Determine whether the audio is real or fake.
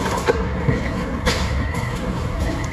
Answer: fake